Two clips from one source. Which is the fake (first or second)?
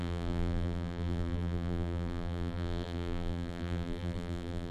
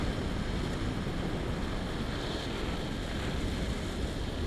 first